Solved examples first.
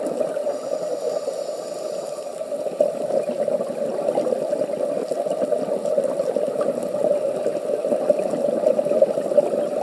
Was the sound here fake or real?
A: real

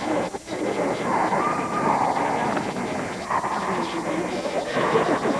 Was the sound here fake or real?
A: real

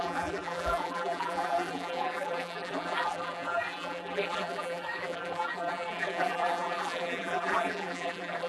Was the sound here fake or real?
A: fake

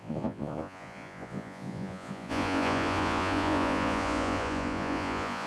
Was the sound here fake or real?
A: fake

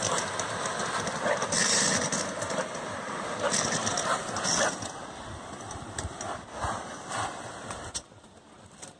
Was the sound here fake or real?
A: real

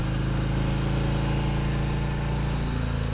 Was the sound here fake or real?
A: real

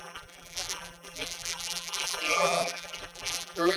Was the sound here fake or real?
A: fake